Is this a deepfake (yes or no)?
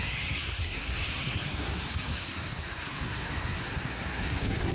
yes